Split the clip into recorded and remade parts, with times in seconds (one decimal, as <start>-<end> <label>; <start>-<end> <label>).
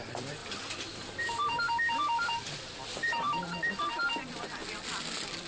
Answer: 0.0-4.6 remade; 4.6-5.5 recorded